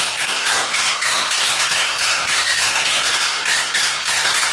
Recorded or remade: remade